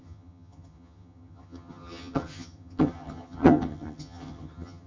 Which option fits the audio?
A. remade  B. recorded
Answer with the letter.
A